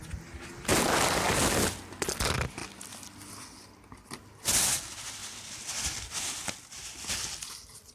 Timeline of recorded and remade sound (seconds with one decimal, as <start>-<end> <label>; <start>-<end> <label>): 0.0-7.9 recorded